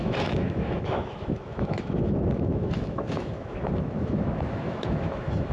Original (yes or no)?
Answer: no